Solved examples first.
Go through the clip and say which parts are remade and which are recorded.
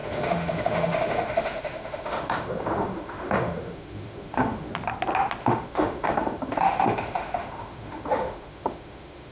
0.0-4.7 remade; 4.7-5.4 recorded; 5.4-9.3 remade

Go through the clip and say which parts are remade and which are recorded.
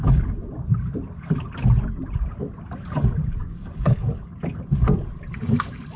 0.0-3.4 recorded; 3.4-4.3 remade; 4.3-6.0 recorded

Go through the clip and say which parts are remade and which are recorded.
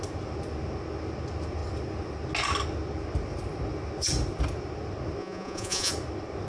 0.0-5.2 recorded; 5.2-5.9 remade; 5.9-6.5 recorded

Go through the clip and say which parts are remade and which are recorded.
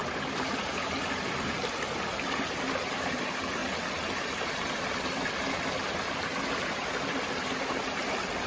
0.0-8.5 recorded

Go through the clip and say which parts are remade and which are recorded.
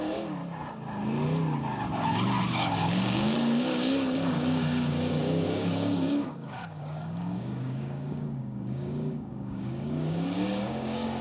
0.0-0.4 remade; 0.4-2.4 recorded; 2.4-11.2 remade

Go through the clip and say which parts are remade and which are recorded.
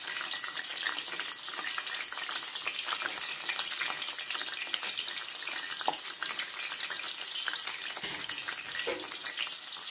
0.0-9.9 recorded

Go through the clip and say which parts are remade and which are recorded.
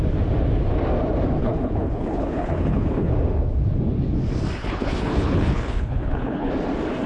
0.0-1.4 recorded; 1.4-3.1 remade; 3.1-4.6 recorded; 4.6-6.5 remade; 6.5-7.1 recorded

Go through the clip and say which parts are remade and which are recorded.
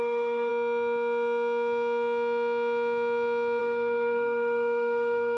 0.0-0.5 remade; 0.5-3.6 recorded; 3.6-5.4 remade